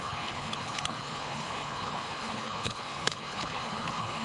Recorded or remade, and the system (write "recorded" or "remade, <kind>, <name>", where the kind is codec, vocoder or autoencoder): remade, codec, HILCodec